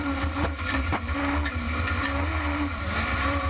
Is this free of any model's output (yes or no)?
no